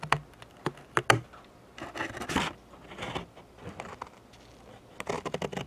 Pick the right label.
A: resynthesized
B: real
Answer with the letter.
B